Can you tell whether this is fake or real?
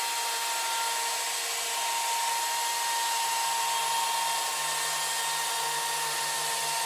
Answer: real